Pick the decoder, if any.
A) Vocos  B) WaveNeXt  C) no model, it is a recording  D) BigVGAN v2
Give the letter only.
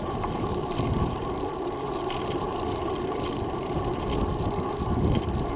D